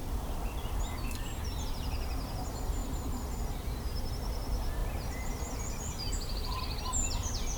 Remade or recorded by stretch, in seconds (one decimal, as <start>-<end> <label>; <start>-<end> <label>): 0.0-4.8 recorded; 4.8-6.6 remade; 6.6-7.6 recorded